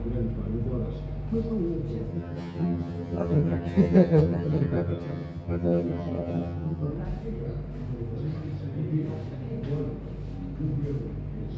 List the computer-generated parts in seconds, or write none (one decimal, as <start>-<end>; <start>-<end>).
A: 2.1-6.9

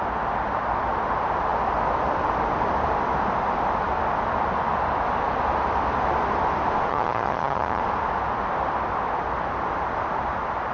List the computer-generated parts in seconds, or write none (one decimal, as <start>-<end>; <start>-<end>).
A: 6.9-7.8

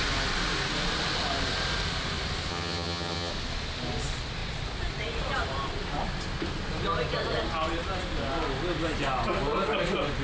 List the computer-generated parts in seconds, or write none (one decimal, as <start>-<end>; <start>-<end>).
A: 2.5-3.3

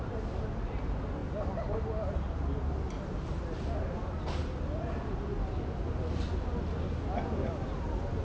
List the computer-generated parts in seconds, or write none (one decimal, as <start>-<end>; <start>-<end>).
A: none

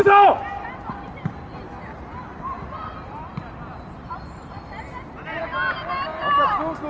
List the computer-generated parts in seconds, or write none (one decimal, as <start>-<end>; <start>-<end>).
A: none